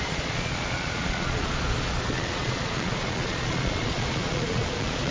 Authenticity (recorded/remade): remade